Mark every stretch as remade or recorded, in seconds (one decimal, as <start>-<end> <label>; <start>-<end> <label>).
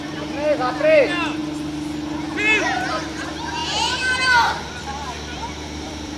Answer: 0.0-1.4 remade; 1.4-2.9 recorded; 2.9-6.2 remade